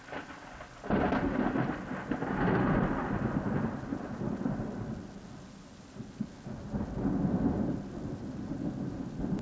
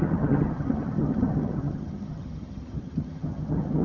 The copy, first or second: second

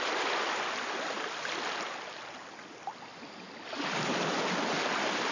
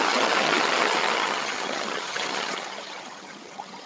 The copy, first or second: second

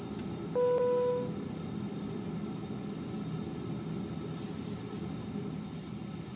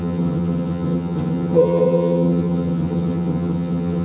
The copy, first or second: second